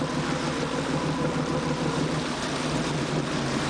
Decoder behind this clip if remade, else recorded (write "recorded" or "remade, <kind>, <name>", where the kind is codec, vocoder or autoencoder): recorded